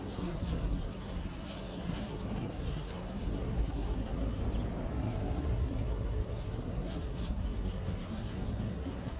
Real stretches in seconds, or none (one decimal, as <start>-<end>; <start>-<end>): 4.4-4.9